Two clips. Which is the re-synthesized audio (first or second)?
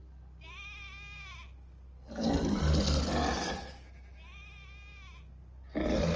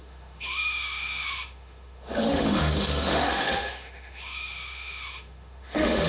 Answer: second